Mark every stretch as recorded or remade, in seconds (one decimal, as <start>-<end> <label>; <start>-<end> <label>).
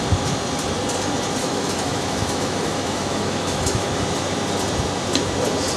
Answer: 0.0-1.4 recorded; 1.4-3.9 remade; 3.9-5.8 recorded